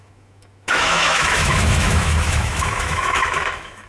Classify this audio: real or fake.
fake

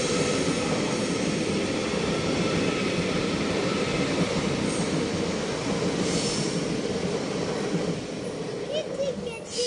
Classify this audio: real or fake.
real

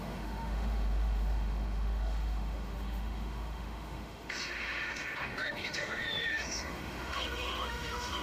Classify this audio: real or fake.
fake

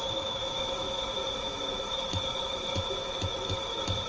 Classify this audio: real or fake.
fake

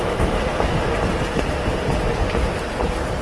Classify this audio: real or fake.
real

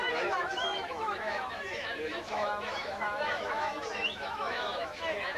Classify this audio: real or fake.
fake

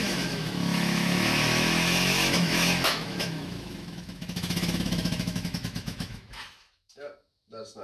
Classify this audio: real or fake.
fake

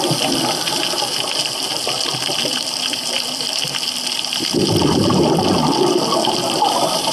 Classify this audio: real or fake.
real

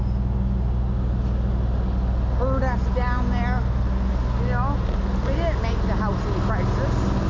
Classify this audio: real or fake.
real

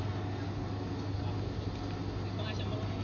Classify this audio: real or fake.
real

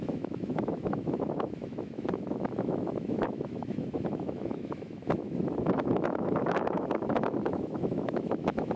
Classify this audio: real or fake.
fake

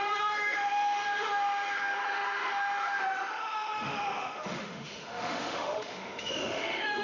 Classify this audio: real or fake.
fake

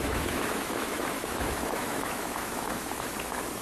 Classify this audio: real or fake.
fake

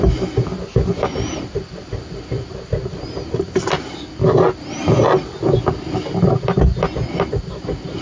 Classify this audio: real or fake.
real